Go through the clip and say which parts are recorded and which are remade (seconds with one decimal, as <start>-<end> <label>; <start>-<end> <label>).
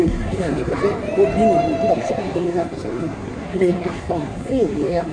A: 0.0-0.8 remade; 0.8-1.9 recorded; 1.9-5.1 remade